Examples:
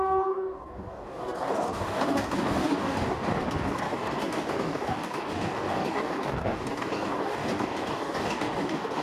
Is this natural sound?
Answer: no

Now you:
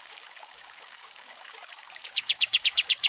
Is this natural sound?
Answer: no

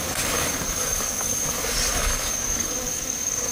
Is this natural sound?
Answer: no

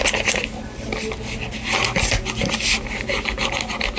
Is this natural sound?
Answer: yes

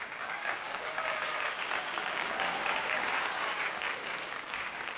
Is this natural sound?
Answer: no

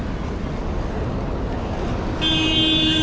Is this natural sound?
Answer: yes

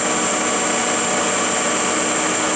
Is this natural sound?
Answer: yes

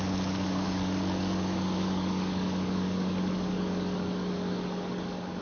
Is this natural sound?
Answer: no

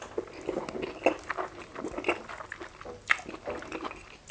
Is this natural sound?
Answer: yes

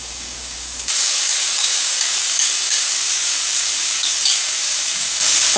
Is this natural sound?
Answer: no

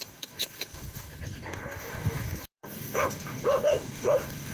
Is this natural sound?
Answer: no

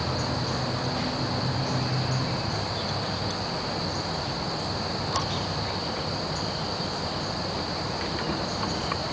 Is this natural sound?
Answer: yes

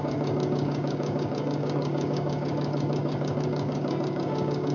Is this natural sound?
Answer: no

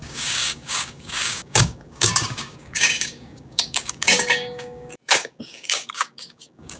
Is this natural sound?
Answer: no